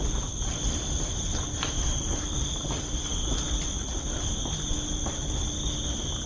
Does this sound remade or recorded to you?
recorded